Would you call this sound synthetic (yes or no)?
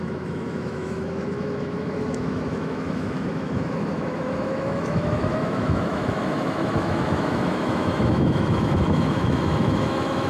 yes